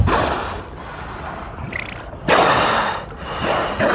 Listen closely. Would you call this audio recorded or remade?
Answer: recorded